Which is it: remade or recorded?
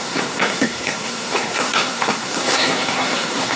remade